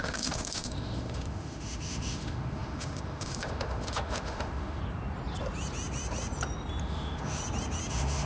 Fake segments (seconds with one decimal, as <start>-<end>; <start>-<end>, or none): 0.0-4.8; 6.8-7.4; 7.9-8.3